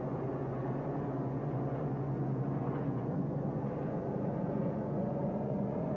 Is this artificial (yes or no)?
yes